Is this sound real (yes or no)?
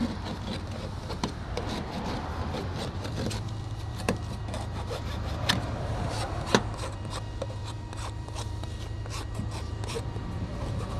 no